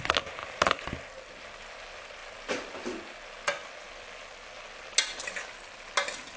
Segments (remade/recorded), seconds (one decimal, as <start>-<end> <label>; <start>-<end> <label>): 0.0-6.4 recorded